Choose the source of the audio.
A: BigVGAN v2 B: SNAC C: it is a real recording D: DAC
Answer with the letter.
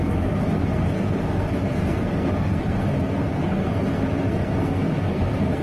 B